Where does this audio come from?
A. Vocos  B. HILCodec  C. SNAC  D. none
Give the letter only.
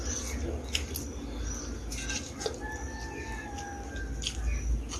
D